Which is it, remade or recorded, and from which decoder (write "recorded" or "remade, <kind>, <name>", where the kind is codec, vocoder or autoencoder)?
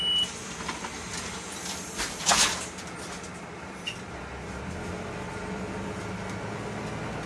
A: recorded